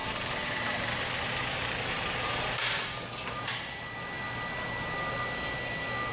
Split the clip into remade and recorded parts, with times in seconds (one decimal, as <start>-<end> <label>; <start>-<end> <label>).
0.0-1.0 recorded; 1.0-2.8 remade; 2.8-6.1 recorded